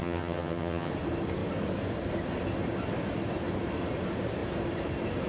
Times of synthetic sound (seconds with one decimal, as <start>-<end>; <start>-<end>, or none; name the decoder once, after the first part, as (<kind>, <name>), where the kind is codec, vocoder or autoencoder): 0.0-0.9 (vocoder, HiFi-GAN)